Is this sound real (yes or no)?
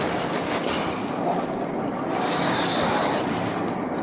yes